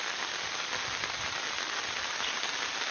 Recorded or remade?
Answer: recorded